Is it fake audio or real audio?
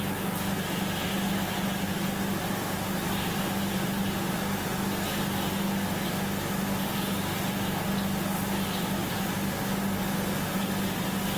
real